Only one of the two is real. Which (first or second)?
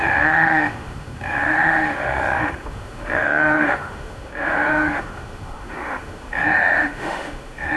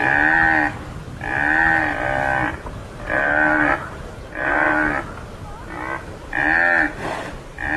second